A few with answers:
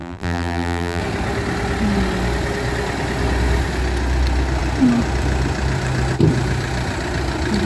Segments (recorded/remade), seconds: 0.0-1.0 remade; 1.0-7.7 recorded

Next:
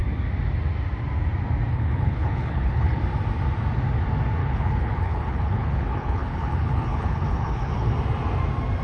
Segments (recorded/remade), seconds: 0.0-1.7 recorded; 1.7-3.0 remade; 3.0-4.4 recorded; 4.4-7.9 remade; 7.9-8.8 recorded

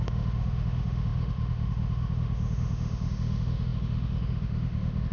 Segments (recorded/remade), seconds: 0.0-5.1 remade

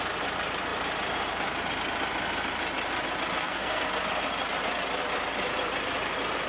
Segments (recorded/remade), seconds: 0.0-3.4 recorded; 3.4-3.9 remade; 3.9-6.5 recorded

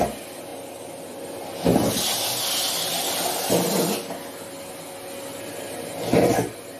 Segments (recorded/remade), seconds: 0.0-6.8 recorded

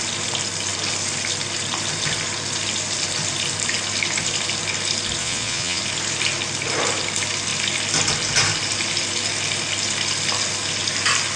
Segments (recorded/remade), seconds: 0.0-5.2 recorded; 5.2-5.8 remade; 5.8-11.4 recorded

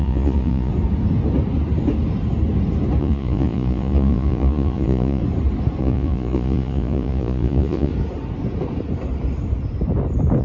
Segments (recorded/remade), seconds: 0.0-0.7 remade; 0.7-3.0 recorded; 3.0-5.2 remade; 5.2-5.8 recorded; 5.8-7.9 remade; 7.9-10.4 recorded

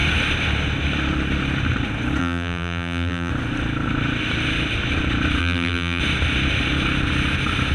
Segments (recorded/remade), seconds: 0.0-2.2 recorded; 2.2-3.3 remade; 3.3-5.4 recorded; 5.4-6.0 remade; 6.0-7.7 recorded